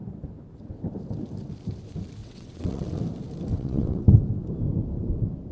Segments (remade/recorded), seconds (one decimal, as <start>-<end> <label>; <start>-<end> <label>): 0.0-2.2 recorded; 2.2-3.0 remade; 3.0-3.5 recorded; 3.5-4.0 remade; 4.0-5.5 recorded